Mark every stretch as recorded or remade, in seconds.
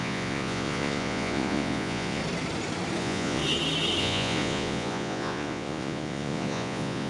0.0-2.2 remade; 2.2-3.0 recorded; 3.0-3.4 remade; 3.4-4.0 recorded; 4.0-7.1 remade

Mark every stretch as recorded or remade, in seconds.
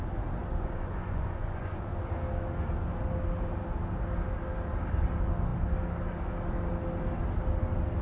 0.0-0.5 recorded; 0.5-2.0 remade; 2.0-8.0 recorded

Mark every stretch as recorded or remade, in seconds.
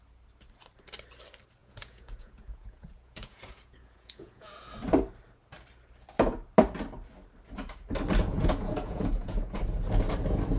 0.0-1.6 recorded; 1.6-4.7 remade; 4.7-8.2 recorded; 8.2-9.6 remade; 9.6-10.6 recorded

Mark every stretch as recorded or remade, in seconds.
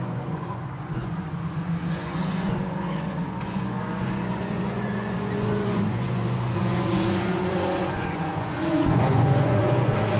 0.0-10.2 remade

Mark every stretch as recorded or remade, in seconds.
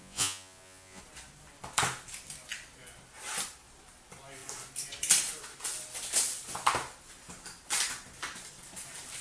0.0-1.0 remade; 1.0-9.2 recorded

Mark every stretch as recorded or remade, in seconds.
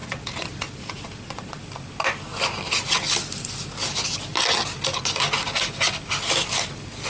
0.0-1.6 remade; 1.6-7.1 recorded